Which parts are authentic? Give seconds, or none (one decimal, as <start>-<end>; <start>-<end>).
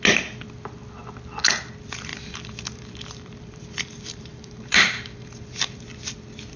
0.0-2.1; 5.8-6.6